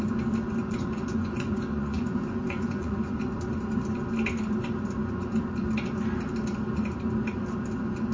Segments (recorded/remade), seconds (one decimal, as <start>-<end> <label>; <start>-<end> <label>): 0.0-0.6 recorded; 0.6-3.2 remade; 3.2-8.1 recorded